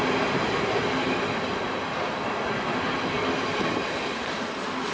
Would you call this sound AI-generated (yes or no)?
no